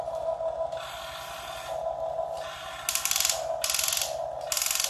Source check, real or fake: real